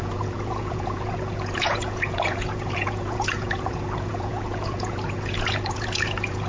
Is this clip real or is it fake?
fake